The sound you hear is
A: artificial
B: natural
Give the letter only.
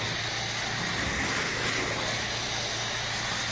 B